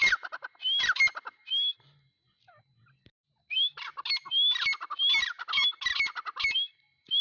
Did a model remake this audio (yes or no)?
no